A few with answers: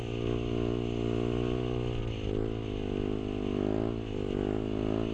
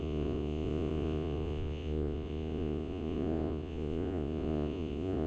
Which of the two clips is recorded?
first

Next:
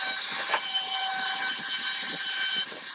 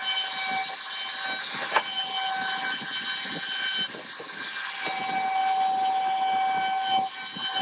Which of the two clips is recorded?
second